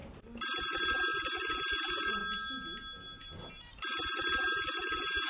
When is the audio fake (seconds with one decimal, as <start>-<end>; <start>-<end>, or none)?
none